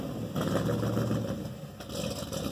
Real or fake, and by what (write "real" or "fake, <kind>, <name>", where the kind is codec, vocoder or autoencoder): real